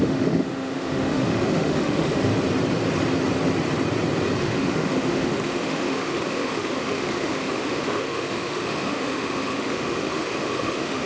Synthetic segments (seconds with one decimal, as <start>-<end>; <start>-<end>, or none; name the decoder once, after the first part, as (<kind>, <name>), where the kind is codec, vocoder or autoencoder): 0.0-2.3 (autoencoder, DAC-VAE); 4.4-11.1

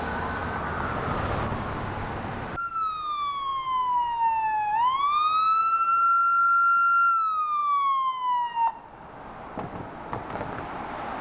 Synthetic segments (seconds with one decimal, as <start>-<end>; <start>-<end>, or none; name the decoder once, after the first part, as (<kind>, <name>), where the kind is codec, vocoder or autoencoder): none

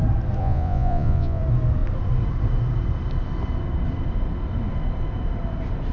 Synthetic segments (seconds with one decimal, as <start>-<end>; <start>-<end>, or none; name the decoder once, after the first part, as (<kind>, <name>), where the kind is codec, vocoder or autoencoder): 0.4-1.4 (vocoder, Vocos)